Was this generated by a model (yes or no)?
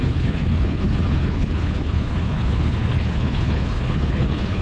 yes